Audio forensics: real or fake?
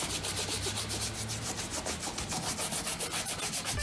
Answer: real